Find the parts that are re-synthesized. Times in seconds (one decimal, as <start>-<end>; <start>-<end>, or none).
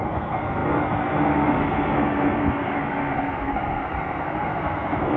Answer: 0.0-5.2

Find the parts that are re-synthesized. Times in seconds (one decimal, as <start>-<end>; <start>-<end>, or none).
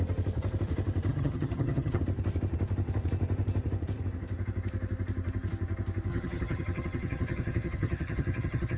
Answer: 1.1-2.0; 6.1-8.8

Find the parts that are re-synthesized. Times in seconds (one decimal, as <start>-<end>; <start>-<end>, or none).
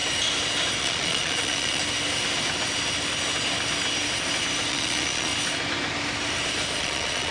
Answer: 0.8-1.8; 4.7-5.3; 6.8-7.3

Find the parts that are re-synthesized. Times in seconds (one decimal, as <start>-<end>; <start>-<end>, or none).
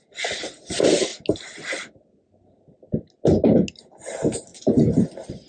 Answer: none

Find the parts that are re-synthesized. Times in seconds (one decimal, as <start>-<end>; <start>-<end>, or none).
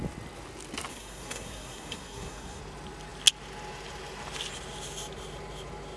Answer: 0.9-2.6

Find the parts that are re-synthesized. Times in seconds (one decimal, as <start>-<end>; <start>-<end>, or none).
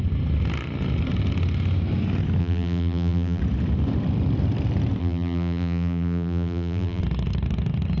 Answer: 2.4-3.4; 5.0-7.0